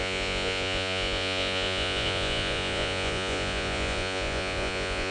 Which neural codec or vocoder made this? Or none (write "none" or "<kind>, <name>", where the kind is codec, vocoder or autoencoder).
vocoder, Vocos